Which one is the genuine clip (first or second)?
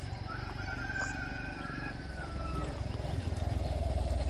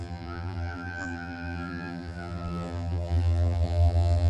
first